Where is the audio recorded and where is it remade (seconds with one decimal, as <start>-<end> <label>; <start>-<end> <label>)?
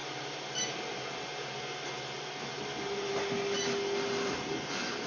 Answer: 0.0-5.1 recorded